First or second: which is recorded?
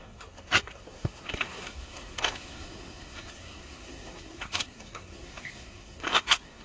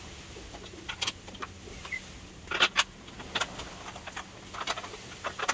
second